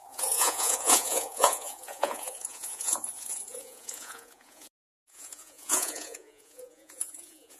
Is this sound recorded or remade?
remade